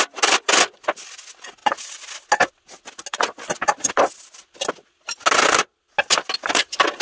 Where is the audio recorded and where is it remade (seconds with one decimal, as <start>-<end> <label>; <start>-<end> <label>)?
0.0-7.0 recorded